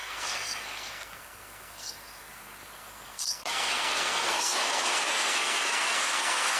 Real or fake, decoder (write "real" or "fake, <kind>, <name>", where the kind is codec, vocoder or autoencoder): fake, codec, SNAC